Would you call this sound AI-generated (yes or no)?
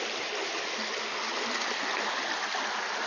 no